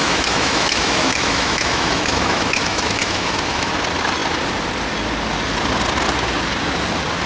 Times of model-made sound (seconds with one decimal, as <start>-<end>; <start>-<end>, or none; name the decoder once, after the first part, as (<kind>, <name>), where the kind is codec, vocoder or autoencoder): 0.0-3.7 (autoencoder, DAC-VAE)